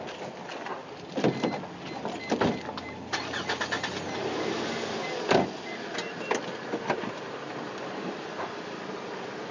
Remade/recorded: recorded